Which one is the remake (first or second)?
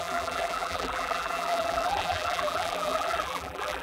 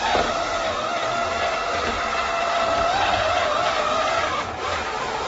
first